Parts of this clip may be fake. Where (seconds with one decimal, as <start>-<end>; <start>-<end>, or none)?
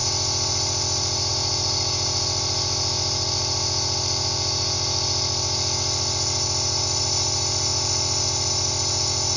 none